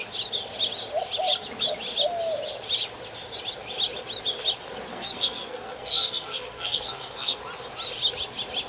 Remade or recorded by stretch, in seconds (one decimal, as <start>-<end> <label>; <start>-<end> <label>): 0.0-4.9 recorded; 4.9-7.4 remade; 7.4-8.7 recorded